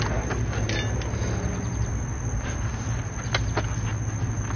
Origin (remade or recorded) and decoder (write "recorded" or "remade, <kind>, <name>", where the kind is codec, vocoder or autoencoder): recorded